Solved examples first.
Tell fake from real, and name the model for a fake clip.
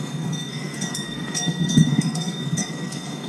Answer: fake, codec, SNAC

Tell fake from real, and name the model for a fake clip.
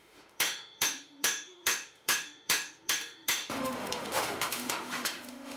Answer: fake, autoencoder, DAC-VAE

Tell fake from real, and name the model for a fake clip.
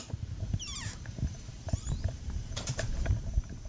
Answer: fake, vocoder, BigVGAN v2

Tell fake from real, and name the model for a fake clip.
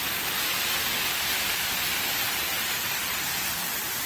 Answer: real